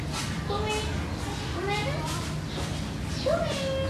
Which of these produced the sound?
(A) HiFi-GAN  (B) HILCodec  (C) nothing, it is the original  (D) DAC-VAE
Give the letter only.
C